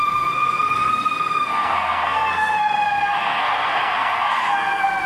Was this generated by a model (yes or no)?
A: yes